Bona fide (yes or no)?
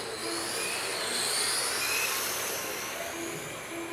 yes